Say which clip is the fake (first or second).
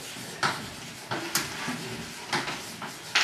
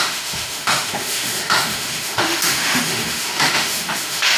second